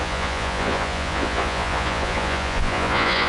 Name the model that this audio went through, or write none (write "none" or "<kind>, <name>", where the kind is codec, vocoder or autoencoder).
vocoder, Vocos